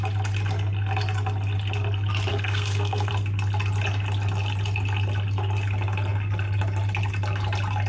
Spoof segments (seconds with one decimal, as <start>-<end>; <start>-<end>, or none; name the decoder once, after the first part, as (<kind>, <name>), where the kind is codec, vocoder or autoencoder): 2.3-3.1 (codec, SNAC)